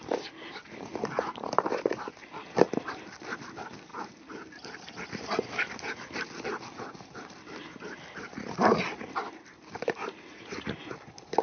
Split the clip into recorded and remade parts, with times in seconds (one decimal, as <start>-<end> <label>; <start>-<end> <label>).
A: 0.0-3.9 recorded; 3.9-5.5 remade; 5.5-11.4 recorded